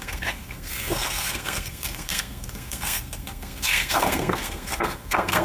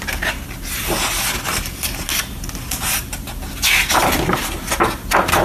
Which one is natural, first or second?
second